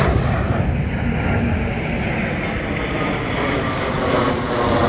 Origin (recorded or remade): recorded